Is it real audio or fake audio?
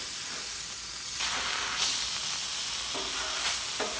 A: real